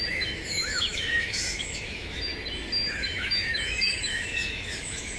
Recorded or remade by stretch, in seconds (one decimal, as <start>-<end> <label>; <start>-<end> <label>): 0.0-2.3 remade; 2.3-2.9 recorded; 2.9-5.2 remade